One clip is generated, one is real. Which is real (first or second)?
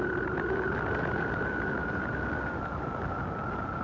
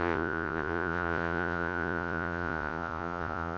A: first